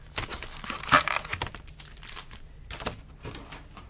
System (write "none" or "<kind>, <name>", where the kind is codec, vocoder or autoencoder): none